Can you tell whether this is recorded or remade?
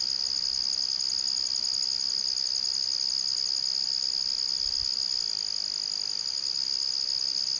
recorded